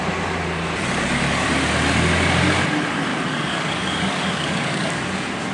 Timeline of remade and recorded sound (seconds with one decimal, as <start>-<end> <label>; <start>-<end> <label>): 0.0-3.1 recorded; 3.1-5.0 remade; 5.0-5.5 recorded